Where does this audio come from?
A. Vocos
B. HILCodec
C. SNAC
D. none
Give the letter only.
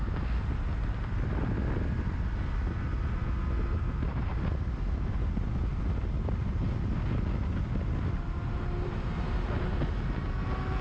D